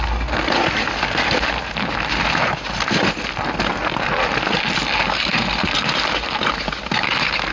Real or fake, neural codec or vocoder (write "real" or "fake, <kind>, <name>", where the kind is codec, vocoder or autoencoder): real